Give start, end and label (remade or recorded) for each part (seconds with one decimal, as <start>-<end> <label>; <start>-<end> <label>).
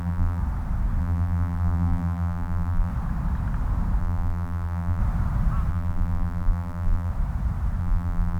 0.0-0.4 remade; 0.4-1.0 recorded; 1.0-2.9 remade; 2.9-4.0 recorded; 4.0-5.0 remade; 5.0-5.7 recorded; 5.7-7.1 remade; 7.1-7.8 recorded; 7.8-8.4 remade